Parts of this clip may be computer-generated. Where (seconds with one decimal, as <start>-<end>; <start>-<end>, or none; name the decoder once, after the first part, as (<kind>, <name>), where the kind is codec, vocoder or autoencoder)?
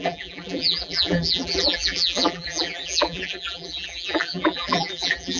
0.0-5.4 (vocoder, BigVGAN v2)